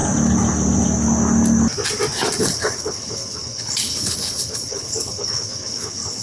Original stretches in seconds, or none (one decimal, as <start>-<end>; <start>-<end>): 0.0-2.4